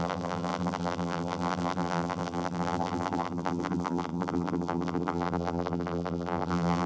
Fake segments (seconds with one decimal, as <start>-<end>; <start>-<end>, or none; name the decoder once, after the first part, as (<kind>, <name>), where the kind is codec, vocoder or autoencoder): 0.0-6.9 (vocoder, BigVGAN v2)